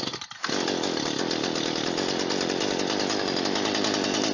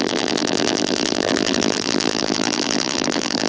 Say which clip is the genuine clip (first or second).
first